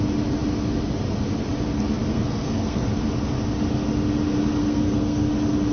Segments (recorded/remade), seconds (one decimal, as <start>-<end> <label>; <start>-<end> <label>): 0.0-2.1 recorded; 2.1-2.9 remade; 2.9-4.6 recorded; 4.6-5.3 remade; 5.3-5.7 recorded